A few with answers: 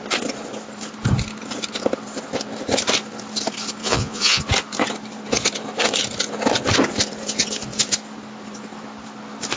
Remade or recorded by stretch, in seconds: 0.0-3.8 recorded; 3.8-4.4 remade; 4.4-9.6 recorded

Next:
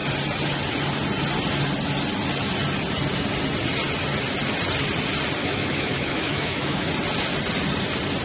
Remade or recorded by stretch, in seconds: 0.0-5.4 recorded; 5.4-6.9 remade; 6.9-8.2 recorded

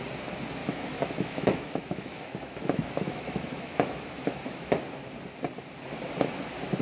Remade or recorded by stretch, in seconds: 0.0-0.6 recorded; 0.6-4.7 remade; 4.7-6.8 recorded